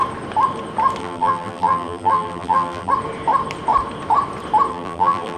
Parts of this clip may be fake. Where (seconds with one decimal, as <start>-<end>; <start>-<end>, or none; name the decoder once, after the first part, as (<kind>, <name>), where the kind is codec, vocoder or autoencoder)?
1.0-2.9 (vocoder, BigVGAN v2); 4.7-5.4